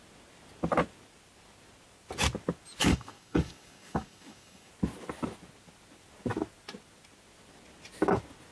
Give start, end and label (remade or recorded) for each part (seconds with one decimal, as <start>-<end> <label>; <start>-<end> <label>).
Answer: 0.0-2.8 recorded; 2.8-4.7 remade; 4.7-8.5 recorded